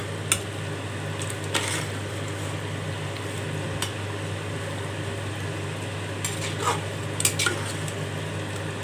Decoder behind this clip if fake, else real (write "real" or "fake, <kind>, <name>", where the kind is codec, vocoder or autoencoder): real